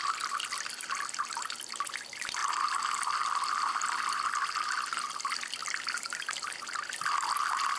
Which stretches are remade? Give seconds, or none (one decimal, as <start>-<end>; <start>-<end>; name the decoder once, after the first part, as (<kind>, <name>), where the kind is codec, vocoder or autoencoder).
2.4-4.9 (vocoder, BigVGAN v2); 5.6-6.2

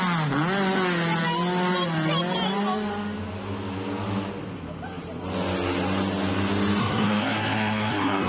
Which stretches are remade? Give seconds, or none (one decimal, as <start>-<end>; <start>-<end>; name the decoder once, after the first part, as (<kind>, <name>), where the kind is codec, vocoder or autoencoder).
6.8-8.3 (codec, SNAC)

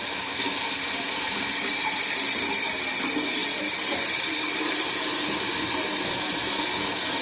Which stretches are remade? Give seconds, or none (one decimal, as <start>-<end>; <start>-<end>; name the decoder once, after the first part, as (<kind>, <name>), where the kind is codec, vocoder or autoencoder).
none

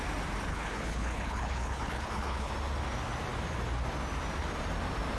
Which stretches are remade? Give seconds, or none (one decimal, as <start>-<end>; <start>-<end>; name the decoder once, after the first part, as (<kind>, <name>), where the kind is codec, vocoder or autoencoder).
0.5-2.5 (codec, HILCodec)

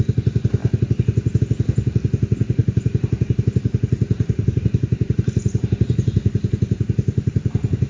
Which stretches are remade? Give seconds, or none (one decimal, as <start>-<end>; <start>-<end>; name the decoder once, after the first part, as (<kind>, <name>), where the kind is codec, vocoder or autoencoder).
0.6-1.4 (vocoder, BigVGAN v2); 2.6-7.3